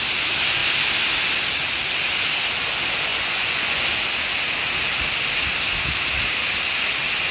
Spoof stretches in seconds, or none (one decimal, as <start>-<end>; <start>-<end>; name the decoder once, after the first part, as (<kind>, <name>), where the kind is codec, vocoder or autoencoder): 3.1-3.8 (vocoder, Vocos)